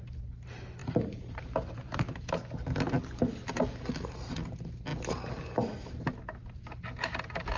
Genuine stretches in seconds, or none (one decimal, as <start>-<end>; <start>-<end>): 0.0-0.8; 2.3-7.6